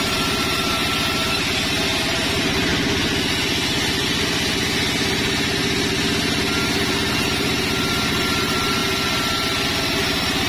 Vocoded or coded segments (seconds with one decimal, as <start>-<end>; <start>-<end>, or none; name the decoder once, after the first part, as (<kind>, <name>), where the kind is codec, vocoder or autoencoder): 0.0-0.8 (vocoder, BigVGAN v2); 1.3-2.7; 7.1-8.8; 9.8-10.5